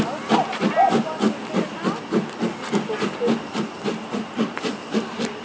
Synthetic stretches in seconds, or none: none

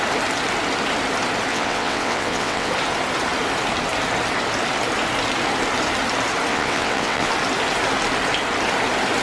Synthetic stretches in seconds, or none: 1.5-2.7 (vocoder, WaveNeXt); 6.5-7.3

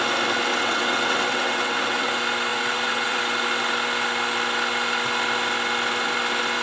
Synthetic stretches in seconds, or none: 0.5-2.1 (vocoder, WaveNeXt); 2.5-3.2